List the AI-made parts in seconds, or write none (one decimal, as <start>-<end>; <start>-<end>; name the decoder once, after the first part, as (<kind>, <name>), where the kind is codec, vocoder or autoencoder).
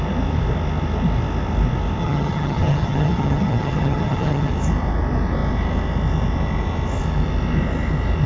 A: 2.0-4.5 (vocoder, HiFi-GAN)